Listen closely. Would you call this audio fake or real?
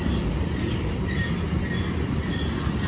real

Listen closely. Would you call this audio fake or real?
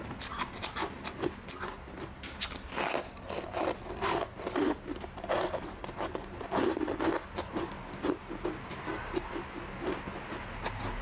real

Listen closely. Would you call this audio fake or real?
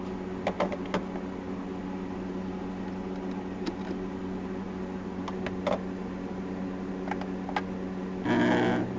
real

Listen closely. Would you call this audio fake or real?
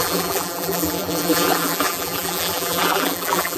fake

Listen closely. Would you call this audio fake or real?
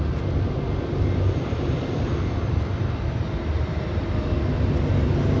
real